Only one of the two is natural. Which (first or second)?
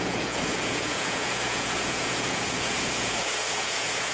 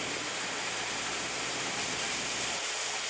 second